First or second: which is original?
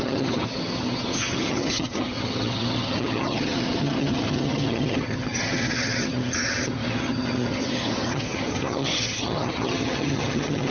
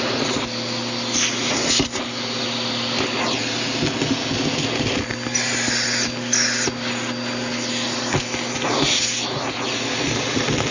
second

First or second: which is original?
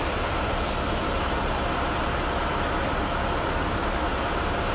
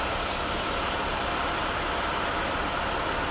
first